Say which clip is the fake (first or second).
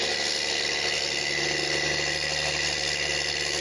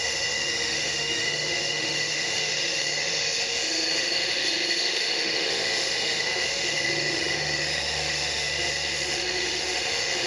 second